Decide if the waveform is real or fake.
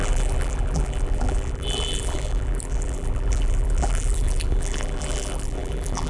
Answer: fake